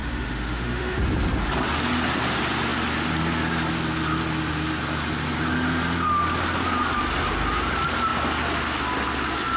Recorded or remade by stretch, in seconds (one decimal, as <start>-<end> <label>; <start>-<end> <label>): 0.0-1.0 remade; 1.0-9.6 recorded